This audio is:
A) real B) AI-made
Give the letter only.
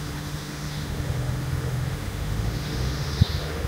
B